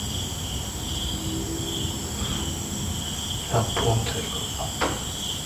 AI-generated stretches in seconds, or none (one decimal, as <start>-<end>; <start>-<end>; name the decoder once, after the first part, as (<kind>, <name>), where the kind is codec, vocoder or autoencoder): 4.1-4.6 (vocoder, BigVGAN v2)